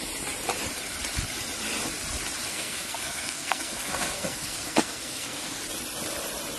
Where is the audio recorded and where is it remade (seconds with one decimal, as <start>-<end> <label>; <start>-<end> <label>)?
0.0-2.5 recorded; 2.5-5.6 remade; 5.6-6.6 recorded